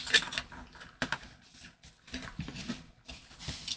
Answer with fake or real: real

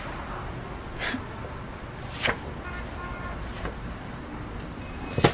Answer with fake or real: real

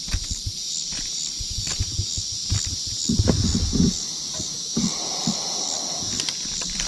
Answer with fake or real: real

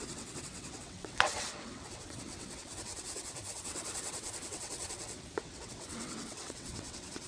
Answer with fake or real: fake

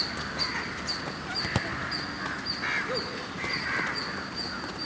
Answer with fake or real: real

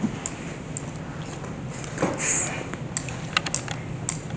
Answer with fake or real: real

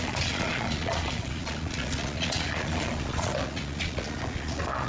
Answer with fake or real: fake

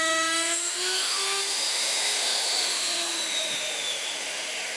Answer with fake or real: fake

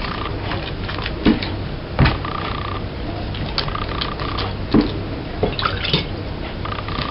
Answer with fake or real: real